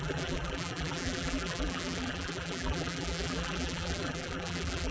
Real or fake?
fake